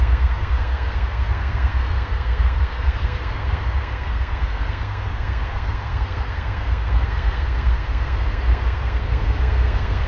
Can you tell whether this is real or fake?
fake